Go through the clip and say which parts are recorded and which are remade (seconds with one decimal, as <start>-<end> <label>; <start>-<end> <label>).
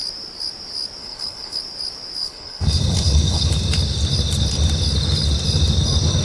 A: 0.0-1.0 recorded; 1.0-1.6 remade; 1.6-2.2 recorded; 2.2-3.6 remade; 3.6-6.2 recorded